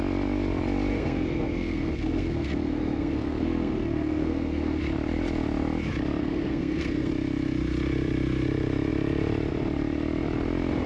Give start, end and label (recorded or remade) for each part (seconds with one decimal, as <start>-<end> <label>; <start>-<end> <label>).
0.0-0.9 recorded; 0.9-4.8 remade; 4.8-6.2 recorded; 6.2-7.1 remade; 7.1-10.9 recorded